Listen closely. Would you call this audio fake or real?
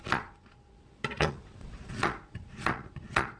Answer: fake